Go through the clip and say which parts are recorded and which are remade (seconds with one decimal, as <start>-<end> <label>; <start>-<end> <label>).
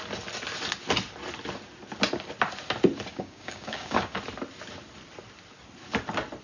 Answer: 0.0-3.1 recorded; 3.1-4.2 remade; 4.2-6.4 recorded